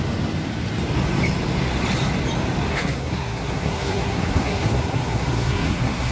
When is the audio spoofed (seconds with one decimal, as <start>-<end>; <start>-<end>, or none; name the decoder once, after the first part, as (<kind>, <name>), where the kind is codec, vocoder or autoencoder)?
2.7-6.1 (codec, SNAC)